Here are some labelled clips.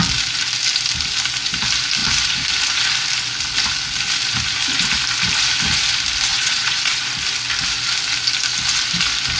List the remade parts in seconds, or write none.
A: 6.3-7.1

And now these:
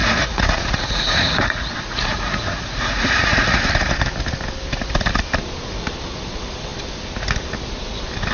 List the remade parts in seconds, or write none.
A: 0.0-3.6

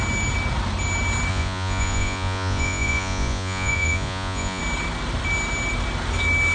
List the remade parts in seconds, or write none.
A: 1.3-4.6

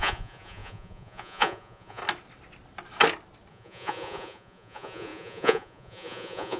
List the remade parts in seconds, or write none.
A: 0.0-2.0; 3.5-6.6

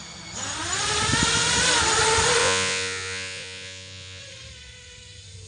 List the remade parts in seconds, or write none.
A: 2.4-4.2

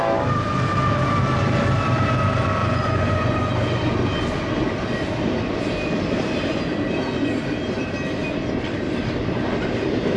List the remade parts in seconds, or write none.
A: 2.6-3.4

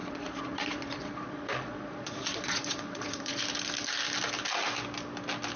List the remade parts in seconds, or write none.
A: 0.0-3.4

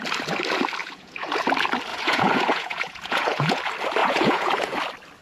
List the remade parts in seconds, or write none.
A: 0.8-1.4; 1.9-3.6; 4.0-4.8